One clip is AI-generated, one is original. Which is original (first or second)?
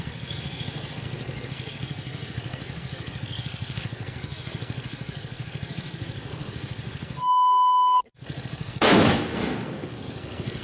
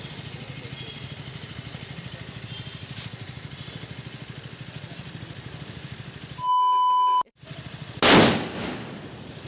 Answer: second